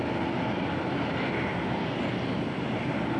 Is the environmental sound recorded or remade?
recorded